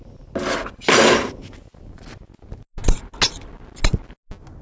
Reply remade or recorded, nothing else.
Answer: recorded